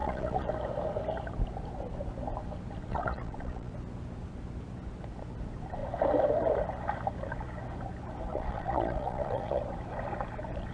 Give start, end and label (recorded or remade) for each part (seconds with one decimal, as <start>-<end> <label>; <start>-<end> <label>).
0.0-0.5 remade; 0.5-2.9 recorded; 2.9-3.7 remade; 3.7-8.3 recorded; 8.3-9.6 remade; 9.6-10.7 recorded